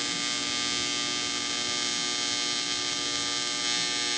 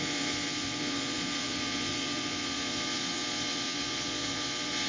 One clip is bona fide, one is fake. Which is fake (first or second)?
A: second